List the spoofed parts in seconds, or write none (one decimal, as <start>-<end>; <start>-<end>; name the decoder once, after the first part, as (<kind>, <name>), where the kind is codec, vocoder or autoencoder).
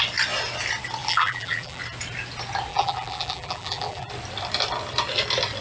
1.0-1.8 (vocoder, BigVGAN v2); 2.7-4.1